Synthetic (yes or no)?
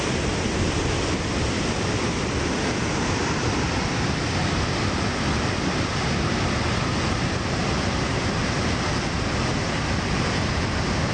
no